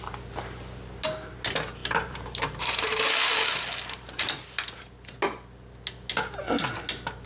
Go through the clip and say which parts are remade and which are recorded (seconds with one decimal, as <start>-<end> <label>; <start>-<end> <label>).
0.0-1.8 recorded; 1.8-3.0 remade; 3.0-7.3 recorded